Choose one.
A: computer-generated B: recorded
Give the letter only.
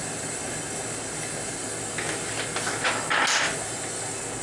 B